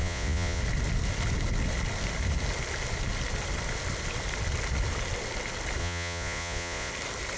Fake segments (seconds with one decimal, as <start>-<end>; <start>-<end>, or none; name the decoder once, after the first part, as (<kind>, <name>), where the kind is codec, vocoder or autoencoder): 0.0-0.6 (vocoder, Vocos); 5.8-6.9